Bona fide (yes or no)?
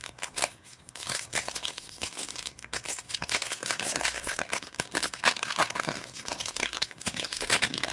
no